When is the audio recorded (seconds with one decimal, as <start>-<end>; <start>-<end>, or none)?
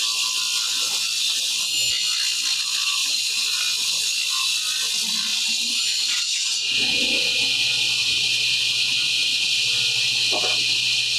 0.0-3.0; 3.6-5.3; 6.2-8.0; 8.6-11.2